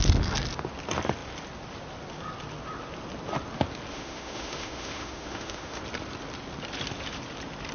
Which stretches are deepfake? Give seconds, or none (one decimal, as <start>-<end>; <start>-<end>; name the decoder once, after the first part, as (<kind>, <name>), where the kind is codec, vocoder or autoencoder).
3.9-5.8 (autoencoder, DAC-VAE)